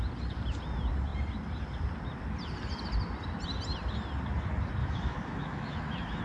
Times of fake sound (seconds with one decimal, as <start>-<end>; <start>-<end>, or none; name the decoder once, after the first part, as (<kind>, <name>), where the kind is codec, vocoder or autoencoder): 4.8-6.2 (autoencoder, DAC-VAE)